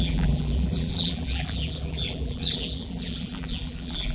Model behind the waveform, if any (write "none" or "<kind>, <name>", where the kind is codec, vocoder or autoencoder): vocoder, BigVGAN v2